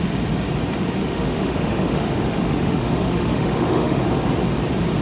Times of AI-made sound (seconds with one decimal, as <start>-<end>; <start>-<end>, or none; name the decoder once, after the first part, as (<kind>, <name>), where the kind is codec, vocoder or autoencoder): 1.0-4.0 (autoencoder, DAC-VAE)

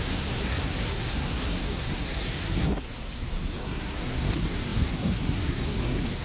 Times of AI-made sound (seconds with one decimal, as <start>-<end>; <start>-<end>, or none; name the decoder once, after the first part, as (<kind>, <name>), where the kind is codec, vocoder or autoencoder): 0.0-6.2 (codec, SNAC)

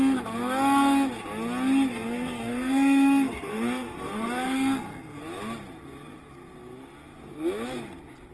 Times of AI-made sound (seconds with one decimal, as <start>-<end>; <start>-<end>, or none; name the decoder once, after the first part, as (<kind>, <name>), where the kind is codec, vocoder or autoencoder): 1.9-5.2 (codec, SNAC)

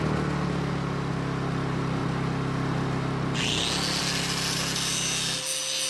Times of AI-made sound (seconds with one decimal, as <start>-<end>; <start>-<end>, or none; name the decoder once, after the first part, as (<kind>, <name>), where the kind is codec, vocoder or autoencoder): none